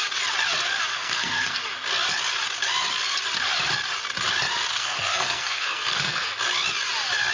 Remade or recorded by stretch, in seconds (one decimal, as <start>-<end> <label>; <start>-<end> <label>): 0.0-0.9 recorded; 0.9-1.6 remade; 1.6-4.7 recorded; 4.7-6.3 remade; 6.3-7.3 recorded